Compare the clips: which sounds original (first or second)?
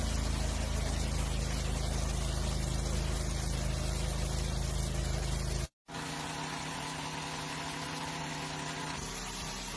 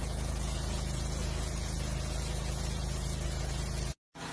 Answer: first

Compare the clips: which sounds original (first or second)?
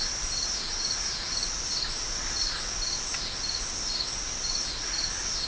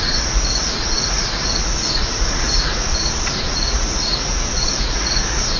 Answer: first